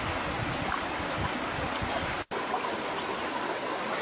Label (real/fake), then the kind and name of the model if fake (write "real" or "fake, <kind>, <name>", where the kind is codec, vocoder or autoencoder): real